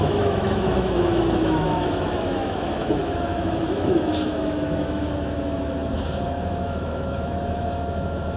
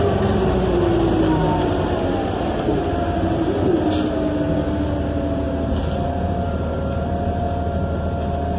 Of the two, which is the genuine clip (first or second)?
second